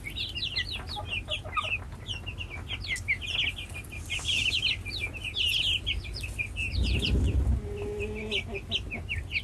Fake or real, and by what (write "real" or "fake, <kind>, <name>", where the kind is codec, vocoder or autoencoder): real